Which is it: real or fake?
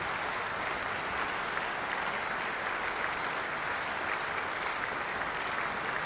real